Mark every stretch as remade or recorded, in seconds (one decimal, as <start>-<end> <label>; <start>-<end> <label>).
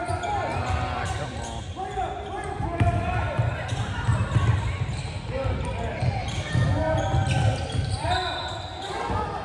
0.0-0.5 recorded; 0.5-2.1 remade; 2.1-6.2 recorded; 6.2-7.0 remade; 7.0-9.4 recorded